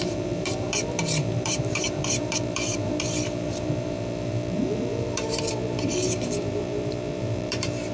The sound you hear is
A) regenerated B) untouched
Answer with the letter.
A